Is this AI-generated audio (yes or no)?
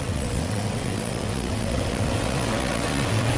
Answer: yes